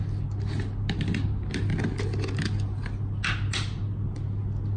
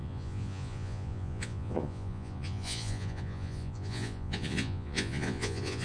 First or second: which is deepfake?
second